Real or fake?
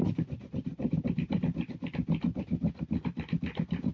real